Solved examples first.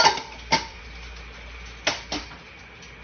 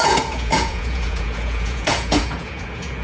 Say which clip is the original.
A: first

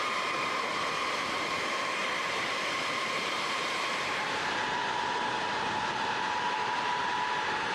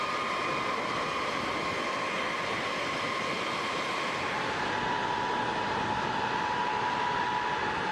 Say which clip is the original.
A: second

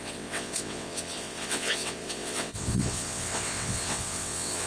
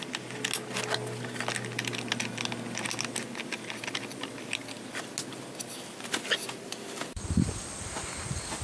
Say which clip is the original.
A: second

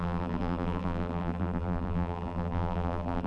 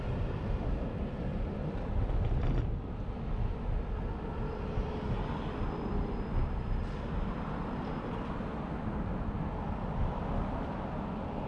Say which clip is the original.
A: second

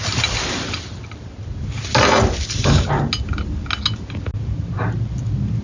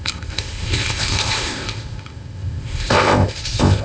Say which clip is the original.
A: first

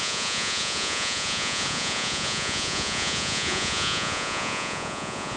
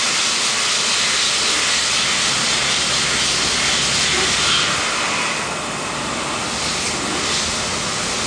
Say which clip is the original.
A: second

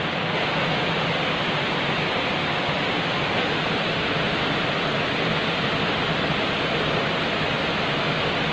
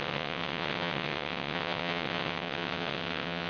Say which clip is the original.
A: first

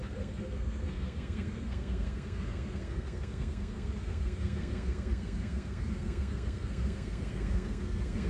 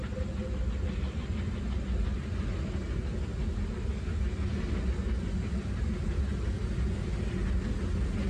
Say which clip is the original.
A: second